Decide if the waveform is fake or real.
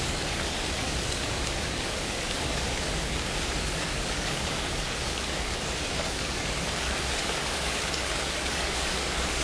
fake